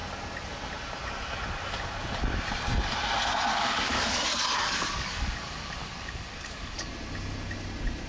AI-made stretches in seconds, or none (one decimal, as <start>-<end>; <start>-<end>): 3.5-6.9

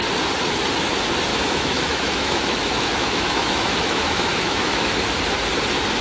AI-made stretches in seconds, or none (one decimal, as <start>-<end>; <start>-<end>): 1.3-4.9

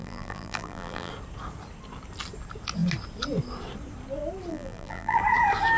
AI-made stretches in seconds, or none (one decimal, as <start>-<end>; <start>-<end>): 0.0-1.1; 4.5-5.2

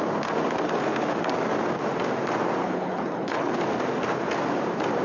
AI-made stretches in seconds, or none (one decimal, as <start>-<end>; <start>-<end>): 2.6-3.6

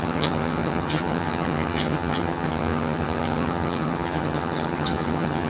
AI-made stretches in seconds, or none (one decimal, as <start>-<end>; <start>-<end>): 0.0-5.5

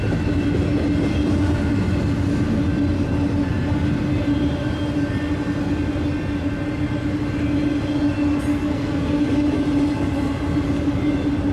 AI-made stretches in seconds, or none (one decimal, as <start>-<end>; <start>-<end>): 8.5-9.2

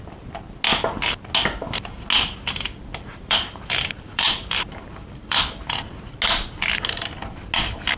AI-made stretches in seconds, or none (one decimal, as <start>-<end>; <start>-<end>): 3.1-5.4

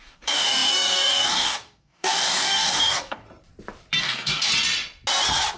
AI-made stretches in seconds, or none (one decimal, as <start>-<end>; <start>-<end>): 0.0-3.2; 4.0-4.5